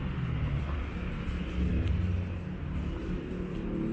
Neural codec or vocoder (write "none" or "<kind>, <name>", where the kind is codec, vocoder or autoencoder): none